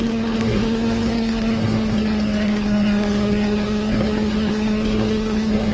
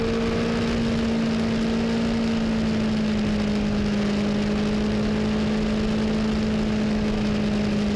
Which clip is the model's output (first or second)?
first